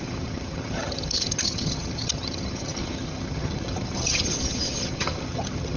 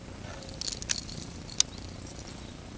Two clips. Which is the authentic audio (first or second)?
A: second